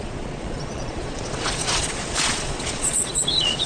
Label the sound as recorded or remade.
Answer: remade